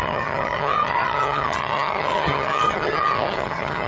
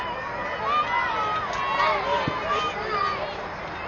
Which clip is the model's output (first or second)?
first